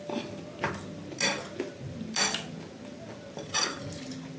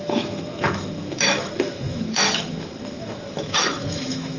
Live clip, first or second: first